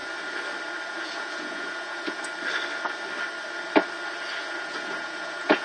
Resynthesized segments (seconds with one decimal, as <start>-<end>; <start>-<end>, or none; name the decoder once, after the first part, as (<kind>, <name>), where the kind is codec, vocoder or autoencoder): 0.9-2.3 (vocoder, Vocos); 4.4-5.6

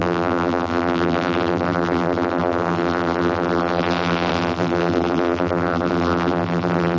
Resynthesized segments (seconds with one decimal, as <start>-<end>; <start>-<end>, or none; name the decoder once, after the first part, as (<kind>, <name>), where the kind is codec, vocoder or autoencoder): 0.0-7.0 (vocoder, BigVGAN v2)

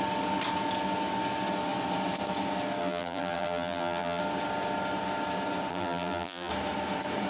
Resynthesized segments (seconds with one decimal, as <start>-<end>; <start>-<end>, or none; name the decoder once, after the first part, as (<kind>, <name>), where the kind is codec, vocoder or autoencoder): 2.8-4.2 (vocoder, BigVGAN v2); 5.7-6.5

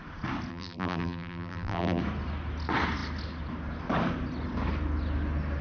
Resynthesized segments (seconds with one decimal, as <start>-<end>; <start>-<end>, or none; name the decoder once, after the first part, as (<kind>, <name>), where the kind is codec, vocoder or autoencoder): 0.5-2.0 (vocoder, BigVGAN v2)

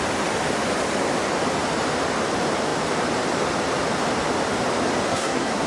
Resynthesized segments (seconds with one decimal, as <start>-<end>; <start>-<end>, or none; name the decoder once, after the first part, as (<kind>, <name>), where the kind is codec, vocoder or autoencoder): 5.1-5.7 (codec, SNAC)

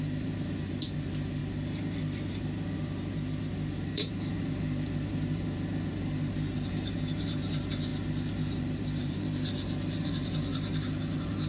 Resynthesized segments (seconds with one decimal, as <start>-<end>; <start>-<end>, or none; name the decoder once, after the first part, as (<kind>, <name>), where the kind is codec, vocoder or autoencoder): 0.0-1.4 (vocoder, BigVGAN v2); 2.3-7.9; 8.6-11.5

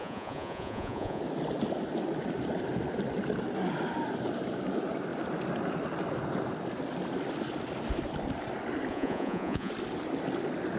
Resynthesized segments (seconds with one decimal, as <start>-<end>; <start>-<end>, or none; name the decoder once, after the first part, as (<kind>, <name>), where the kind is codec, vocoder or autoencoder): 0.0-1.2 (vocoder, Vocos); 8.9-9.7